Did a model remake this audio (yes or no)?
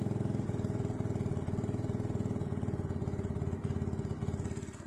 no